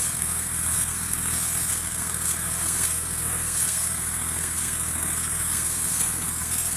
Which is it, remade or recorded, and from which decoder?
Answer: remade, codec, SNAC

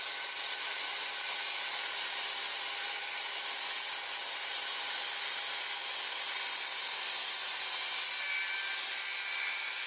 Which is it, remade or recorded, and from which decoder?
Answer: recorded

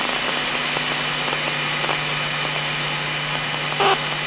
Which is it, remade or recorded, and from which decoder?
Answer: recorded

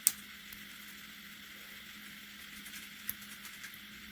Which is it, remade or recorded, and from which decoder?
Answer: recorded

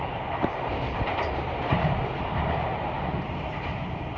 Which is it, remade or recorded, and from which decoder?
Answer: remade, vocoder, BigVGAN v2